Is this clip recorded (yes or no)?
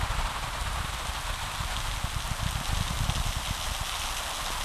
yes